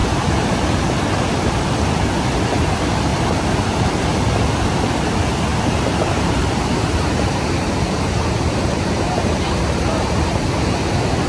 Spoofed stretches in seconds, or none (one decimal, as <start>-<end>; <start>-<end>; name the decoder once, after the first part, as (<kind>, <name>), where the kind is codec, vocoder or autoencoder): 0.0-1.0 (vocoder, BigVGAN v2); 5.5-10.3